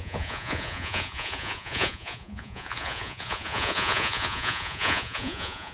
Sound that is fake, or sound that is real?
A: fake